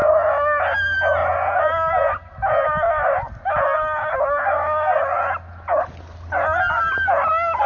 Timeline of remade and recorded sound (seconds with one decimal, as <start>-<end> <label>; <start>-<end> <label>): 0.0-7.7 recorded